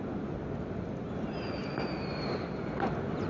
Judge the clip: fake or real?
real